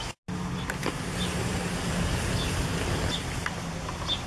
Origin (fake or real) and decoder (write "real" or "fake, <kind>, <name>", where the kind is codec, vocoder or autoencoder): real